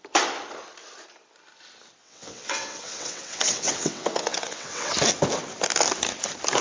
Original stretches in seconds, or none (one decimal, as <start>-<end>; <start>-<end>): 0.0-2.0; 4.9-6.6